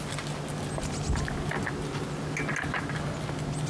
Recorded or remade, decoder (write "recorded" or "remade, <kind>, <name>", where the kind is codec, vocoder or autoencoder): recorded